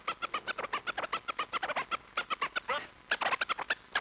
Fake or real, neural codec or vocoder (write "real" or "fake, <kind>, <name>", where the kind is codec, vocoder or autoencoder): real